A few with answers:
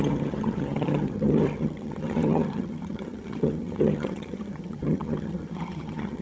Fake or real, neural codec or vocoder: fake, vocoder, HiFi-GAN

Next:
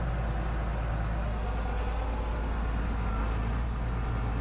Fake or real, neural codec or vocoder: real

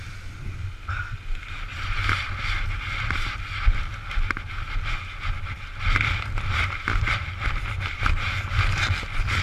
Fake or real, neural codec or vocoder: real